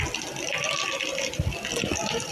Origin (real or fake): fake